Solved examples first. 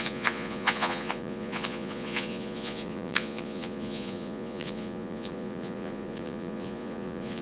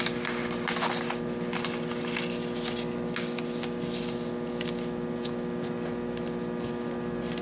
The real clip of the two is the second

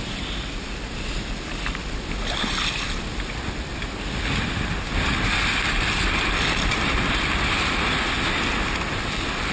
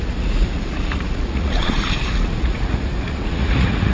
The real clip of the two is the first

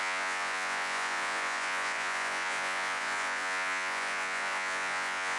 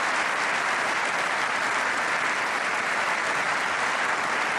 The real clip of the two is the second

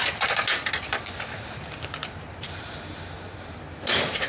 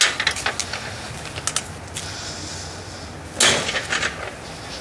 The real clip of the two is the second